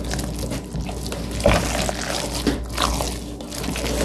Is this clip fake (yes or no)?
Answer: no